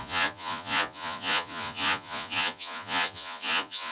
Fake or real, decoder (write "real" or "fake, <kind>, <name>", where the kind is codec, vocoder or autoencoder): fake, vocoder, Vocos